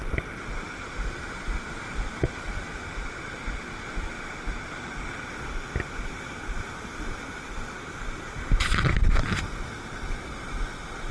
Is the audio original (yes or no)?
yes